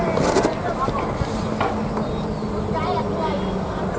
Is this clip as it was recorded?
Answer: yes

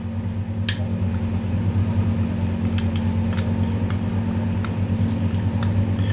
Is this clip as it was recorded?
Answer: yes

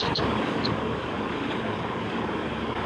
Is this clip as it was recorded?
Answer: no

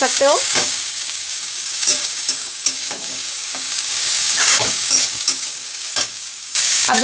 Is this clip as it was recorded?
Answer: no